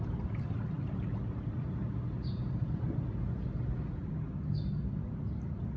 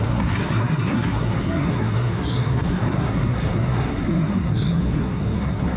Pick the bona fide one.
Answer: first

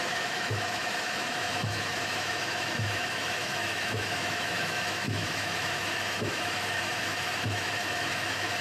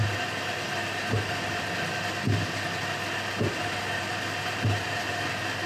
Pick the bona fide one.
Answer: second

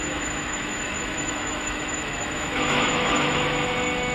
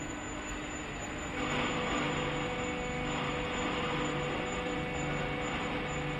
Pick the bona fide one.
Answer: second